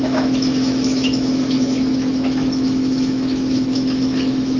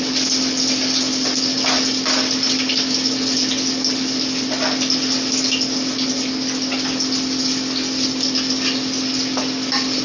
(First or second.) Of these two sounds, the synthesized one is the first